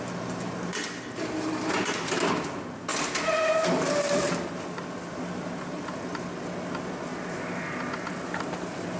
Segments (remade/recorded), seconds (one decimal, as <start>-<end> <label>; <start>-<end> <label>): 0.0-9.0 recorded